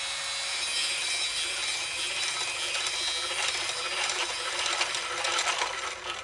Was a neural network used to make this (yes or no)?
no